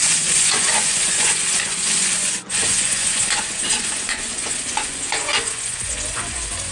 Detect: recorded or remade remade